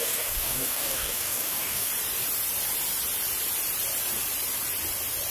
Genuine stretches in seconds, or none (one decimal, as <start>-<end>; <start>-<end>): 1.9-5.3